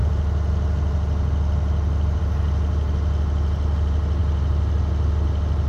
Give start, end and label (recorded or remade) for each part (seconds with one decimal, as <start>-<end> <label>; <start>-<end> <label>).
0.0-5.7 recorded